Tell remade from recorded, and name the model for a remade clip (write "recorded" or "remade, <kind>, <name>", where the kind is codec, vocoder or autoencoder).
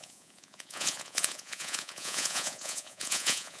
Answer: remade, vocoder, Vocos